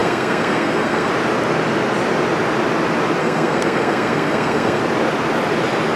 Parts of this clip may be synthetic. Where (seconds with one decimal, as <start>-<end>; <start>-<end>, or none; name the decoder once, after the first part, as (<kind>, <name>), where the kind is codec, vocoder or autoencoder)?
0.0-1.1 (codec, SNAC); 3.2-4.8